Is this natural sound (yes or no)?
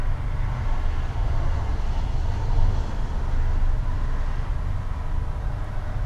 yes